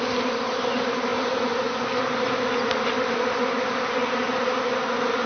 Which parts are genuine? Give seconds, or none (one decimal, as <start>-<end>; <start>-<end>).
0.0-5.3